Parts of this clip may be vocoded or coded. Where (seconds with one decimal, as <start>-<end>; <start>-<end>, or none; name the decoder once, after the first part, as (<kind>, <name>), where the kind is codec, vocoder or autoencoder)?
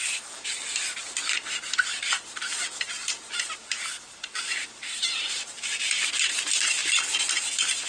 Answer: 0.0-0.6 (vocoder, BigVGAN v2); 2.6-6.0